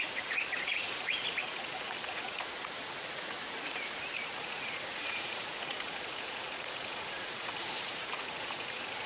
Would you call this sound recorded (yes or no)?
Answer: no